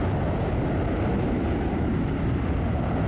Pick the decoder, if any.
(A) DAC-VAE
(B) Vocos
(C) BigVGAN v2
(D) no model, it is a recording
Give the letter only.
D